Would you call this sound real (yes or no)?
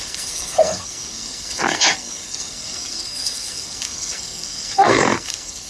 no